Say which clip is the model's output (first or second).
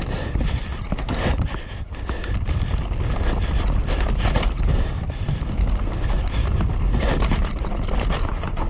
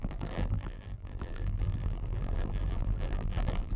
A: second